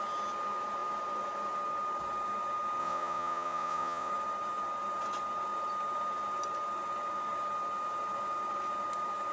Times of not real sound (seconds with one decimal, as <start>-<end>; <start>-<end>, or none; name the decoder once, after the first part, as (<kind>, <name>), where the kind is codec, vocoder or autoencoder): 2.8-4.1 (vocoder, Vocos)